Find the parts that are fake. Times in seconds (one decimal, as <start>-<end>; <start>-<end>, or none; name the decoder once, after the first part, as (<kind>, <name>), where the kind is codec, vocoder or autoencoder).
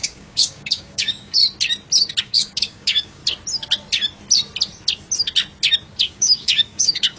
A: 0.0-1.4 (codec, DAC); 2.2-3.2; 6.0-7.2